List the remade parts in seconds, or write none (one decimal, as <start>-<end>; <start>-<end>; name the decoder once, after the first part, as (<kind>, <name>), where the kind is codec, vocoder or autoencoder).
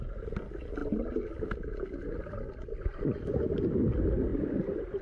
none